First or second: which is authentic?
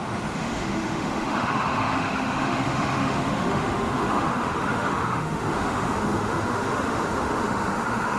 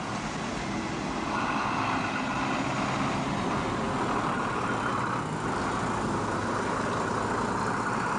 second